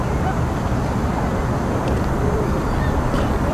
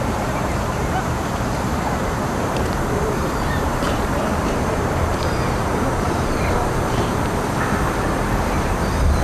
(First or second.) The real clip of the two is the first